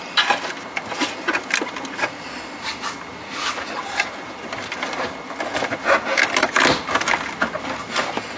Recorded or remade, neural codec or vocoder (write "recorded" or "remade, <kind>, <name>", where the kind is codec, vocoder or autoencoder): recorded